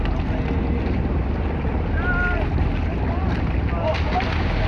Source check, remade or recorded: recorded